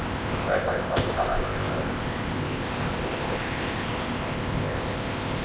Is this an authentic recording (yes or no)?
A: no